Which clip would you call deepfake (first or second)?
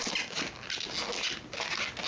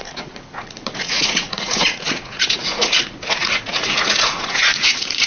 second